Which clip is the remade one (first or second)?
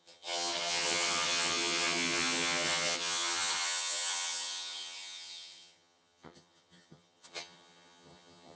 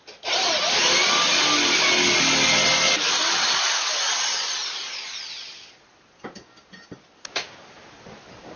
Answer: first